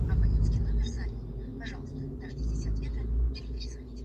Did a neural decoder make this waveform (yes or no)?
no